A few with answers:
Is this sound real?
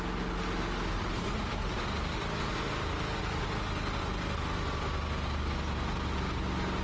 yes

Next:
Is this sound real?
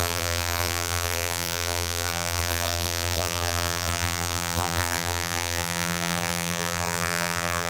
no